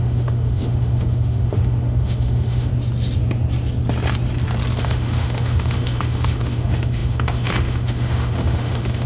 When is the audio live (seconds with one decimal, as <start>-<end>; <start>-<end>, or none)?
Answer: 2.7-4.8